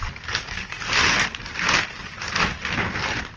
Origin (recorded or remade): recorded